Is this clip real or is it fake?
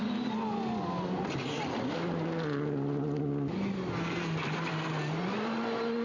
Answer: real